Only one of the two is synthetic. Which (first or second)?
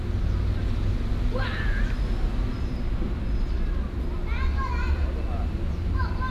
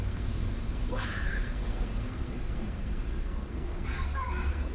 second